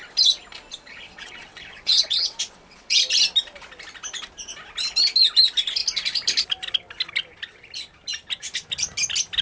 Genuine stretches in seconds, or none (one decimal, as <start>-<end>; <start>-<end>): 0.0-0.7; 3.0-9.4